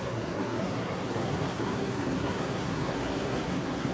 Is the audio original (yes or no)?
no